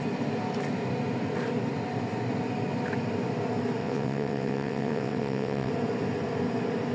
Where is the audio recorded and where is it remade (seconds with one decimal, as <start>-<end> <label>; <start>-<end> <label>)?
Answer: 0.0-3.8 recorded; 3.8-5.7 remade; 5.7-6.9 recorded